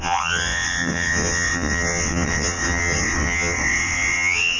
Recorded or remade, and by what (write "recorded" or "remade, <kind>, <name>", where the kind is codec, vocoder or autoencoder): remade, vocoder, WaveNeXt